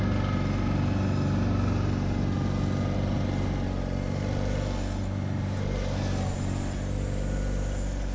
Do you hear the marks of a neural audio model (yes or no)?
no